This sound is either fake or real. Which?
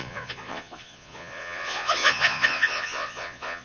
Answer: fake